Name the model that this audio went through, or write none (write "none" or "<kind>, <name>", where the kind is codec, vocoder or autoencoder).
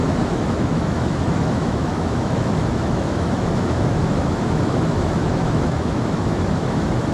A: autoencoder, DAC-VAE